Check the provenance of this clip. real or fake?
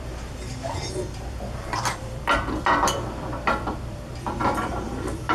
fake